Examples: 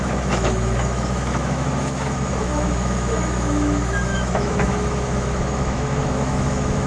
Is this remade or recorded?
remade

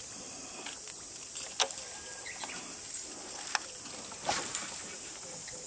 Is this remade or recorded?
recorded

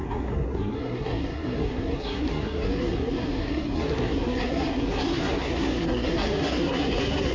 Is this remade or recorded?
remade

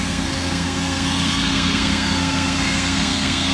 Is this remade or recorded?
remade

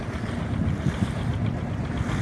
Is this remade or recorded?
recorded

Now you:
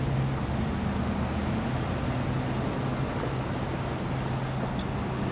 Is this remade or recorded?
recorded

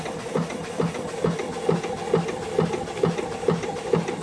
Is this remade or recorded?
recorded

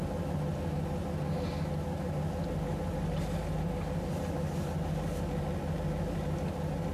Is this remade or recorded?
recorded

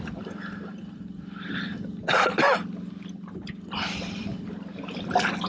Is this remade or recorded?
recorded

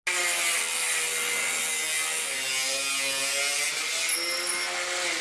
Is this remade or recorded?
recorded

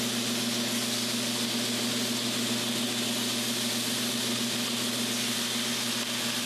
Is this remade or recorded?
recorded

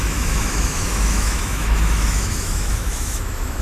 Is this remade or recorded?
remade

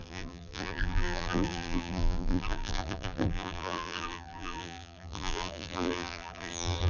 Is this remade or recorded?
remade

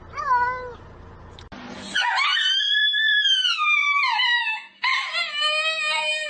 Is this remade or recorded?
recorded